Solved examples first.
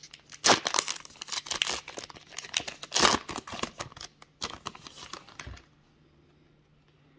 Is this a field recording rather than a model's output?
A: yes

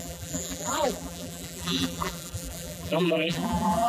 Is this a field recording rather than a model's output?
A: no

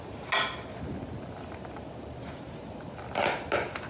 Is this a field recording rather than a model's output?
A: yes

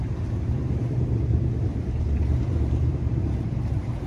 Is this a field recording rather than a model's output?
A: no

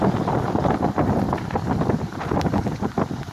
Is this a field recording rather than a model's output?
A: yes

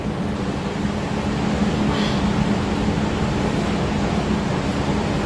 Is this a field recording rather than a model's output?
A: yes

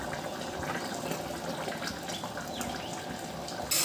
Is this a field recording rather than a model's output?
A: yes